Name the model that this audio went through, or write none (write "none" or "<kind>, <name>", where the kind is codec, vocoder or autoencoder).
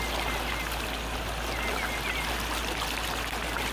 none